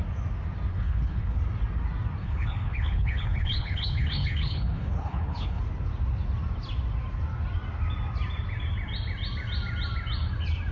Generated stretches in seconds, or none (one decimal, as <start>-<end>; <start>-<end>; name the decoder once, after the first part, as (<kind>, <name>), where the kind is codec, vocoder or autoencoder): 0.7-1.4 (codec, HILCodec); 2.2-5.6